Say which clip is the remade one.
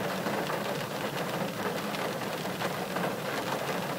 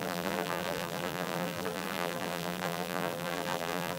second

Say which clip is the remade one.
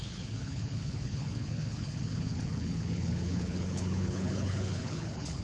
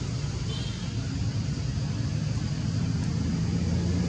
first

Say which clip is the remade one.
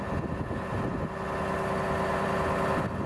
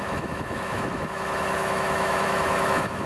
second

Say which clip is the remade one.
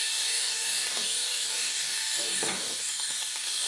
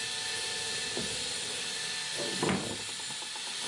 first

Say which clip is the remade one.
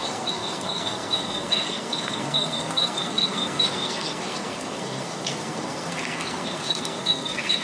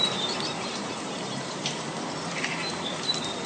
first